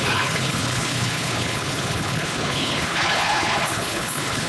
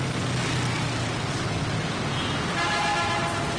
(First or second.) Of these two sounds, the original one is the second